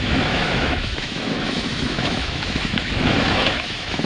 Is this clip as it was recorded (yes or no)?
no